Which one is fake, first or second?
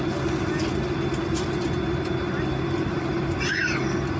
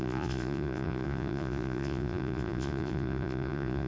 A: second